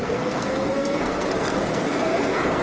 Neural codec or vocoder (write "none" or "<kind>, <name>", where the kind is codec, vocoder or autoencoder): codec, SNAC